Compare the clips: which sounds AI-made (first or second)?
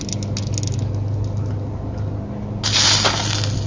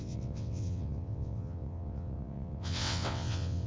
second